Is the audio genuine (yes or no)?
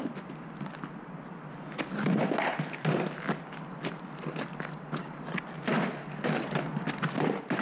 yes